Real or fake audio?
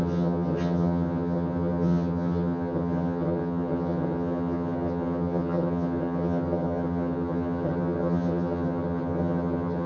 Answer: fake